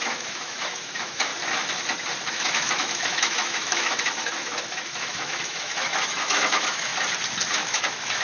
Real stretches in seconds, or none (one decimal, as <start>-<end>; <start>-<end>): 1.3-2.3; 6.9-7.5